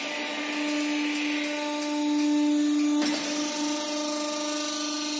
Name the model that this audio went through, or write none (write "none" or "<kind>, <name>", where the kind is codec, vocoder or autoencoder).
none